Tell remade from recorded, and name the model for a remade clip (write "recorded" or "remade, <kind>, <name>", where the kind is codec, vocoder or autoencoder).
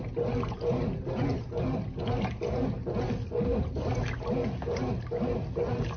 recorded